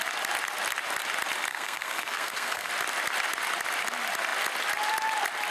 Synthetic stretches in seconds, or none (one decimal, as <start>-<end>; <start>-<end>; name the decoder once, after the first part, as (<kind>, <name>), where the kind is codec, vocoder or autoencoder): 1.5-2.7 (codec, SNAC)